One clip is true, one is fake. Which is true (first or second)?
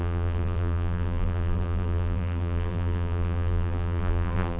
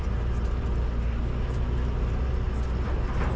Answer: second